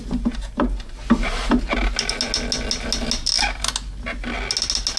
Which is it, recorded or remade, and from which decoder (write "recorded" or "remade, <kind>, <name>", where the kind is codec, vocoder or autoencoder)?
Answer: recorded